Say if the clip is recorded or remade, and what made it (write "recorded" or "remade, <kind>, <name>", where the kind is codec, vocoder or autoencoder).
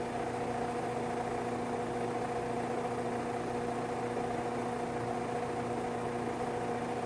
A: recorded